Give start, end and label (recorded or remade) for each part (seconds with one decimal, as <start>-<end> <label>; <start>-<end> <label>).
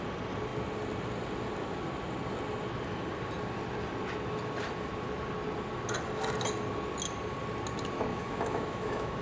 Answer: 0.0-8.1 recorded; 8.1-9.2 remade